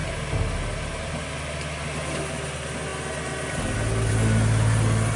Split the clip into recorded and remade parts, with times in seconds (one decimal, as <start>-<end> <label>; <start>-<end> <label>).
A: 0.0-5.2 recorded